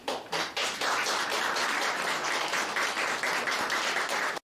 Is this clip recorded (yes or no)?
yes